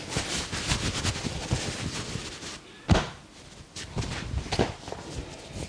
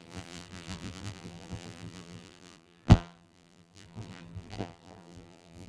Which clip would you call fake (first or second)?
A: second